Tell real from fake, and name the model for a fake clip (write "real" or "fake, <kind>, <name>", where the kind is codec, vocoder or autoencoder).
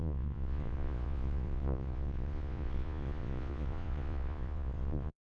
fake, vocoder, Vocos